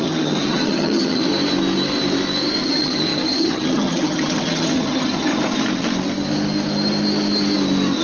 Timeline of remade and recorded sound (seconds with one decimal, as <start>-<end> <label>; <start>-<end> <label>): 0.0-1.3 remade; 1.3-2.6 recorded; 2.6-5.3 remade; 5.3-8.0 recorded